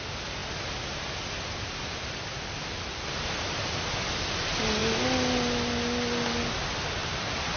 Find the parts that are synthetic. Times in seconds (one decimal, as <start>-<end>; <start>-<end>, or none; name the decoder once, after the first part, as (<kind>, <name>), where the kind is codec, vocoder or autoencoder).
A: 7.0-7.6 (vocoder, BigVGAN v2)